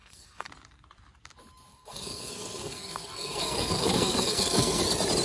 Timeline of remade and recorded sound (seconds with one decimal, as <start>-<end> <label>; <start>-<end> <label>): 0.0-0.5 remade; 0.5-1.7 recorded; 1.7-4.8 remade; 4.8-5.2 recorded